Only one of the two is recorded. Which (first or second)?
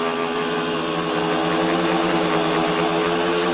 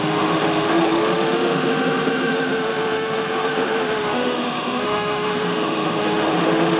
first